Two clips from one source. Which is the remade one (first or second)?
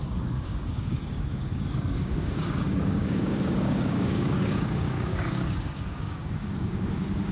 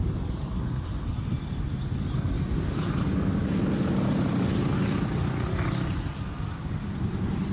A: first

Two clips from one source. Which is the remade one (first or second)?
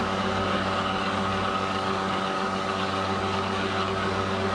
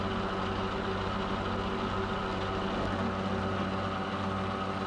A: first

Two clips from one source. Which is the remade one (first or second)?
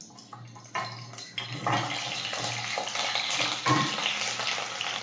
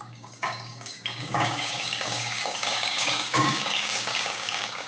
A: second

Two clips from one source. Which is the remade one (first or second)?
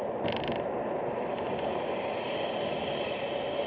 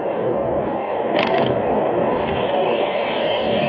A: second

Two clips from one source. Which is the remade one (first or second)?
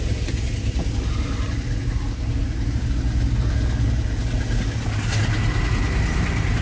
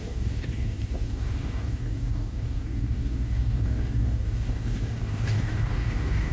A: second